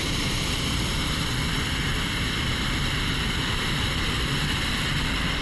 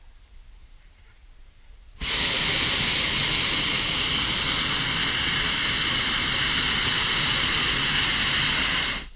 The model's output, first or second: first